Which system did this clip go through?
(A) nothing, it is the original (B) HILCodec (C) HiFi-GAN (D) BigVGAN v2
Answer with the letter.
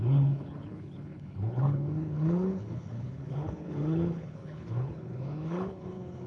B